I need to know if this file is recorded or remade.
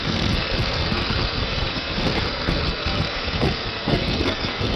remade